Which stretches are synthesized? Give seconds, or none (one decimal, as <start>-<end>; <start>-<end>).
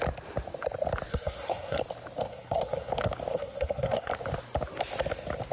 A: 1.1-1.8; 2.3-2.9; 3.3-4.1